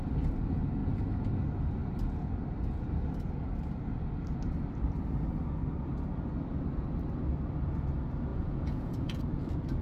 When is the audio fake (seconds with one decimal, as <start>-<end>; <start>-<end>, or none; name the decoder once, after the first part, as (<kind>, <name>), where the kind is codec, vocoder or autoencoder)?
8.3-9.2 (vocoder, Vocos)